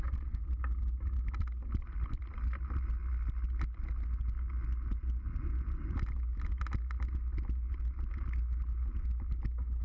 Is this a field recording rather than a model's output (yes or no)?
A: yes